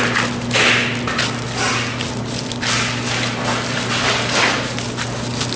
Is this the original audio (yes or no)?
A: yes